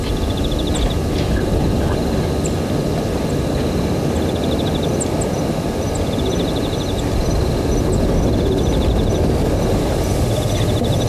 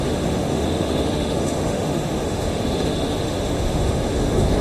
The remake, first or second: second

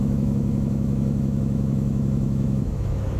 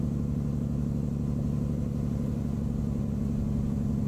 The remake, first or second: first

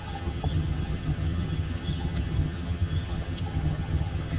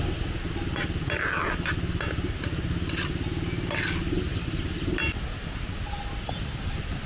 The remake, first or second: first